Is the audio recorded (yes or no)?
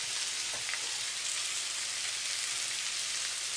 yes